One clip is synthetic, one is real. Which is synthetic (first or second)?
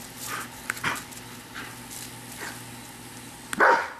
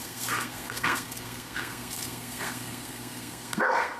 second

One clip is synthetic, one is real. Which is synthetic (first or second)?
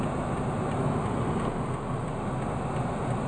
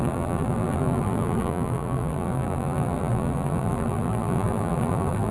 second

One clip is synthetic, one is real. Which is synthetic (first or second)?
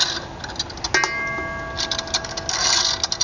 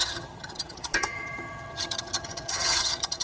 second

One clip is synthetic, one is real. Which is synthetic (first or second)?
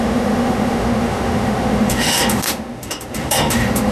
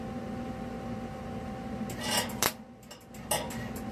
first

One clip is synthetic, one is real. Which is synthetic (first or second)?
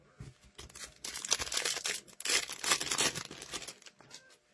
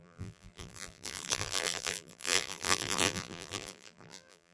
second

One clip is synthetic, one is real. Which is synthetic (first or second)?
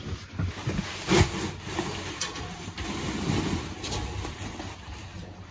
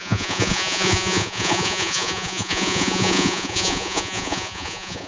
second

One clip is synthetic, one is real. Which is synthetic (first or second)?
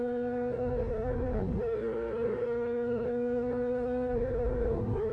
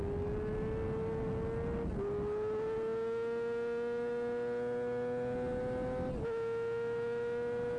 first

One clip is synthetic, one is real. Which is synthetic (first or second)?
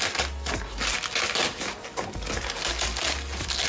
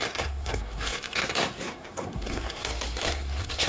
second